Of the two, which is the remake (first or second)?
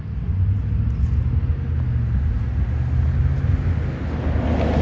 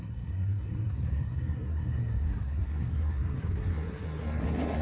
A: second